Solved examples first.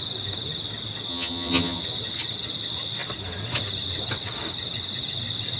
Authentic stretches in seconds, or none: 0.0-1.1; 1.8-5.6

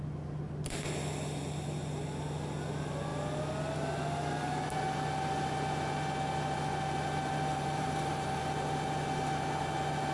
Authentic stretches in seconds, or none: 0.0-7.5; 8.4-10.1

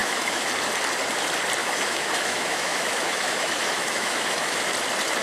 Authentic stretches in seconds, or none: 0.5-1.6; 4.7-5.2

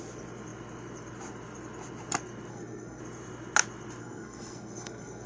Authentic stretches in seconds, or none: 0.0-2.5; 3.0-4.0

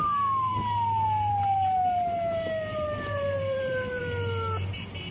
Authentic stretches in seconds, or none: 0.0-2.7; 4.0-5.1

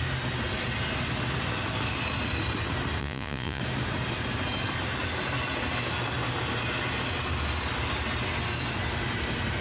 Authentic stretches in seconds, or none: 0.0-3.0; 3.6-9.6

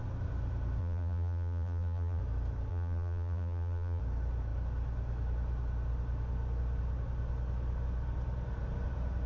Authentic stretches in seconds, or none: 0.0-0.8; 2.2-2.7; 4.0-9.3

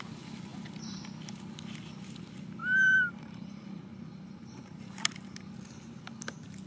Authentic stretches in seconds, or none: 0.0-2.6; 3.8-6.7